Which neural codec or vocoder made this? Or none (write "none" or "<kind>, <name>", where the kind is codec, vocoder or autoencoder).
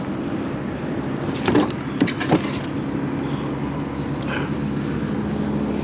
none